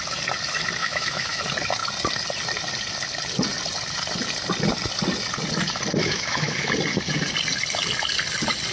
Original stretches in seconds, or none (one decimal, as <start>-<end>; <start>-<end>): 0.0-0.8; 1.4-6.0; 6.7-8.7